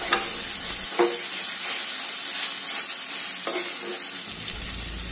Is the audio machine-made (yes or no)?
no